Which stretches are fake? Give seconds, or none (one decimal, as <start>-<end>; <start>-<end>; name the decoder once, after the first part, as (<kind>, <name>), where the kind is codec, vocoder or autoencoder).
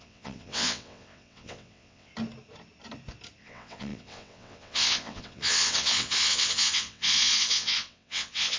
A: 0.0-2.1 (vocoder, WaveNeXt); 3.4-8.6